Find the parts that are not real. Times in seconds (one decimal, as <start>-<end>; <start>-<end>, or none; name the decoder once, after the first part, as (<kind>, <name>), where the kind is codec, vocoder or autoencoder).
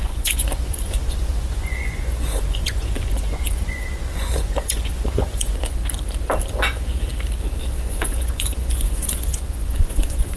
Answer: 0.0-5.8 (vocoder, Vocos); 6.5-7.1; 7.6-10.4